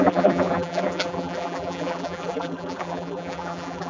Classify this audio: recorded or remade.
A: remade